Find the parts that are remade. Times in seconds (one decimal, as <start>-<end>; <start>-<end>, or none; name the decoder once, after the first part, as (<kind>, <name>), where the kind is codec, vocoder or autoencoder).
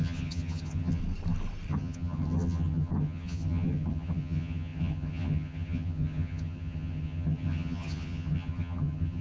0.0-1.0 (vocoder, HiFi-GAN); 1.7-9.2